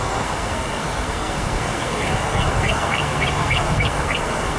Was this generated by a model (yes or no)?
yes